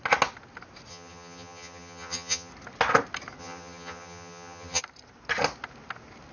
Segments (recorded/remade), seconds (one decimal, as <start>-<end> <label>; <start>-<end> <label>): 0.0-0.9 recorded; 0.9-2.5 remade; 2.5-3.4 recorded; 3.4-4.8 remade; 4.8-6.3 recorded